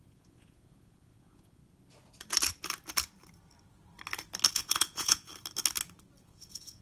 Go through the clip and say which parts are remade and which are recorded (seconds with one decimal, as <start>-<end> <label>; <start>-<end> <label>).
0.0-1.6 remade; 1.6-4.5 recorded; 4.5-5.3 remade; 5.3-6.2 recorded; 6.2-6.8 remade